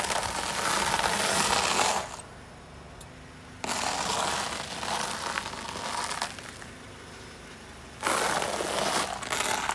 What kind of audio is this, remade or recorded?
recorded